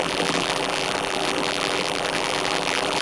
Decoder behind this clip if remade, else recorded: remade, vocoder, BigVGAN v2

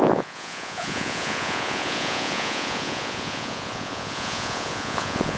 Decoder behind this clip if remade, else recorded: remade, vocoder, Vocos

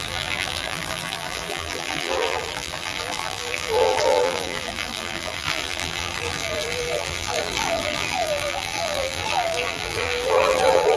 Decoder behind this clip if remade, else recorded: remade, vocoder, BigVGAN v2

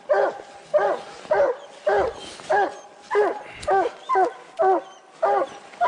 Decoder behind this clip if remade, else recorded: recorded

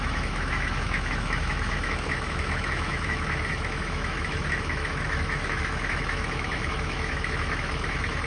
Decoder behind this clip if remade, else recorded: remade, autoencoder, DAC-VAE